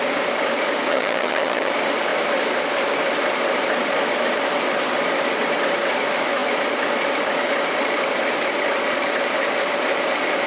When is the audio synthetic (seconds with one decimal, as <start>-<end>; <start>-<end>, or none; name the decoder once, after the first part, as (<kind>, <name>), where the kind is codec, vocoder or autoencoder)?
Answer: 0.9-1.7 (vocoder, HiFi-GAN)